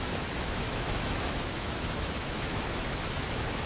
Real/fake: fake